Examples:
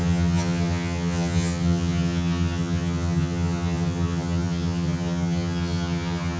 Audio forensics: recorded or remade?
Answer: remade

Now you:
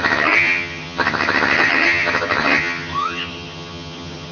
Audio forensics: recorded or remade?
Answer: remade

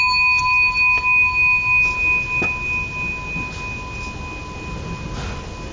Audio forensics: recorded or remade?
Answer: recorded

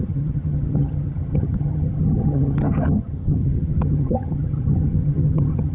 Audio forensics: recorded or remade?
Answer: remade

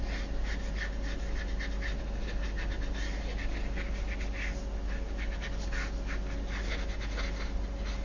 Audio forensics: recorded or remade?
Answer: recorded